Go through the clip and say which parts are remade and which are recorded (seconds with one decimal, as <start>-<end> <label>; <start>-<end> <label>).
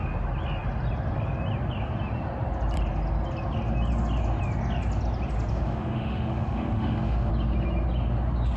0.0-5.5 recorded; 5.5-7.3 remade; 7.3-8.6 recorded